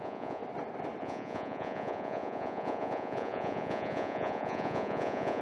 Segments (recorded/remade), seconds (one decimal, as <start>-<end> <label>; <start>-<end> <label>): 0.0-0.4 remade; 0.4-1.0 recorded; 1.0-5.4 remade